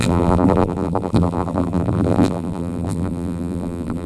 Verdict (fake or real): fake